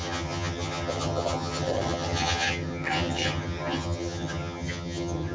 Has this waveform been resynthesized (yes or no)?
yes